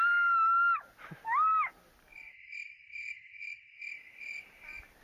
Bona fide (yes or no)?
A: yes